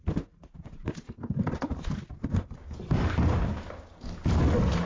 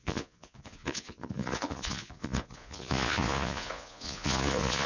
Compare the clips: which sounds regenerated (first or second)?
second